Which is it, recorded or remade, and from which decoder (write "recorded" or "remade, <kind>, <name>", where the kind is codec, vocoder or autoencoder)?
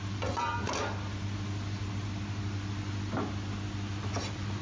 recorded